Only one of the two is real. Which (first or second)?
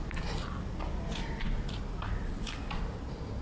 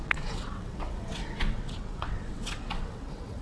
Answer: first